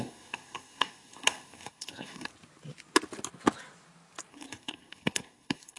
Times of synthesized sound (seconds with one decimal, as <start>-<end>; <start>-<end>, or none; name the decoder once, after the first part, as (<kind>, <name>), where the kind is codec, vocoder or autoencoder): 0.0-2.3 (codec, SNAC); 4.3-5.8